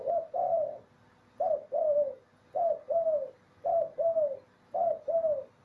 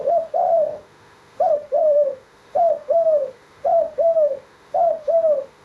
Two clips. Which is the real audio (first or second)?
first